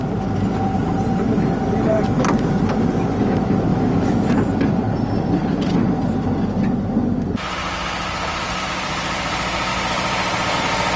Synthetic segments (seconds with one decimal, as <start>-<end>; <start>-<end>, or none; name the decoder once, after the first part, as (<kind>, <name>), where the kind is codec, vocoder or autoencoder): 3.7-4.3 (autoencoder, DAC-VAE)